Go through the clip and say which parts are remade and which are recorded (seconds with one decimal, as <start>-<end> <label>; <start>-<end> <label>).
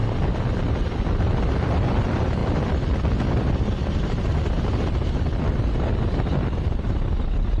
0.0-7.6 remade